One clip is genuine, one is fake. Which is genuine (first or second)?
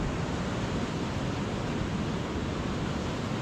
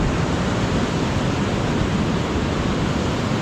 first